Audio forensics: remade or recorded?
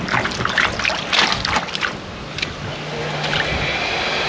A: recorded